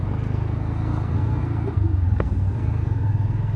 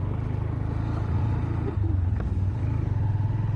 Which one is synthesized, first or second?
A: first